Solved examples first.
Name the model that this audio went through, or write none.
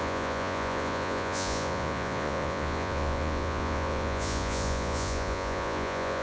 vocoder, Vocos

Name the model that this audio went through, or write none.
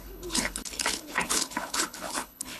codec, HILCodec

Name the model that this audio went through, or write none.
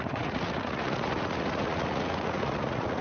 vocoder, Vocos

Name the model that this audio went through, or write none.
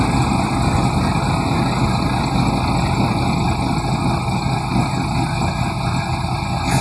none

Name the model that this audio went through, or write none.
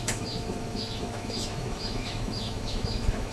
autoencoder, DAC-VAE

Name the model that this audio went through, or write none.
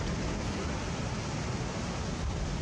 none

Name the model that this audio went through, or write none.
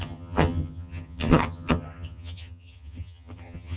vocoder, HiFi-GAN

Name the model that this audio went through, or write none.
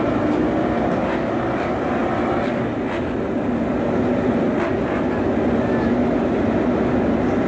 none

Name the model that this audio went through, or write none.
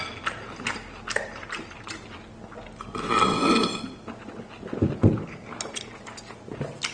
none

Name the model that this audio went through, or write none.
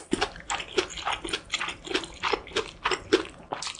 none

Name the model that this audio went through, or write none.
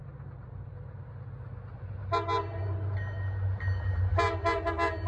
none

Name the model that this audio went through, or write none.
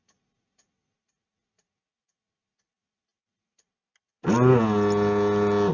none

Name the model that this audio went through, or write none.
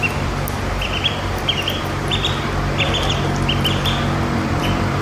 vocoder, BigVGAN v2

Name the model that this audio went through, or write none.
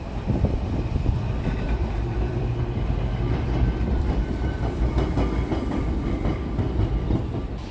vocoder, BigVGAN v2